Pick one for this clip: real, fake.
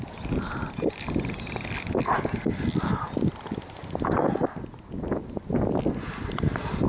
real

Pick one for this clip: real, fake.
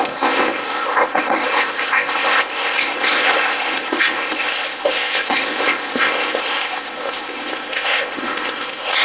fake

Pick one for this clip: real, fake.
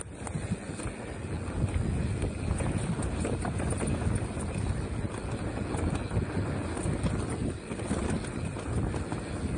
real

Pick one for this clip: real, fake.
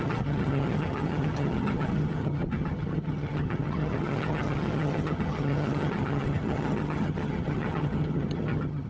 fake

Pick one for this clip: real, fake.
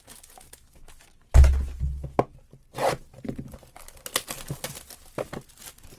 real